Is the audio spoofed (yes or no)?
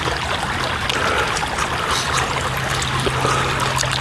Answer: no